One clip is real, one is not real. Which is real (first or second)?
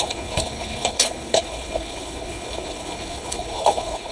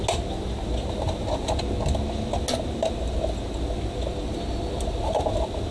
second